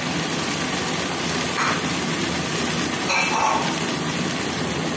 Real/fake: real